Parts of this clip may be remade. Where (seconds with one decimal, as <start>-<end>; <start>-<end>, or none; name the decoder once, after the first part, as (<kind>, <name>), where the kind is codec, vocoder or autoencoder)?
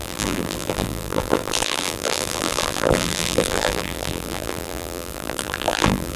0.0-6.2 (vocoder, BigVGAN v2)